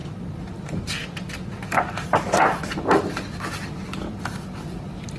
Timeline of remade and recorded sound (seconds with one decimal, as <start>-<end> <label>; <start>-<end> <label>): 0.0-5.2 recorded